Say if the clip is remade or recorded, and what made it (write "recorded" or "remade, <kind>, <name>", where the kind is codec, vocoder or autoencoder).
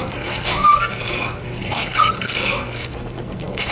remade, codec, SNAC